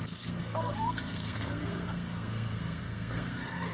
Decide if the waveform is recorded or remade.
remade